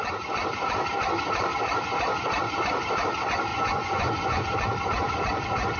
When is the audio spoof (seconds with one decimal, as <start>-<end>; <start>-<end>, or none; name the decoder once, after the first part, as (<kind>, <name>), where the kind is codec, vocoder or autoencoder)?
3.5-4.4 (vocoder, Vocos)